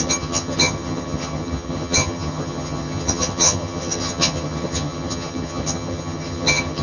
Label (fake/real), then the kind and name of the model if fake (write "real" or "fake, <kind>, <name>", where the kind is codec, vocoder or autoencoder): fake, vocoder, HiFi-GAN